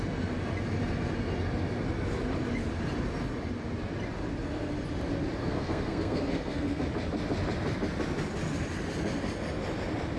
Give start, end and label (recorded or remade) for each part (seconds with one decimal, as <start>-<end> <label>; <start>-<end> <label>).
0.0-5.4 recorded; 5.4-6.8 remade; 6.8-10.2 recorded